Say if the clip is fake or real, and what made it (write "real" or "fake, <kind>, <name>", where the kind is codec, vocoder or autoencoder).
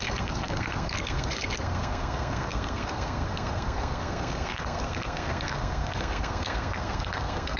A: fake, codec, SNAC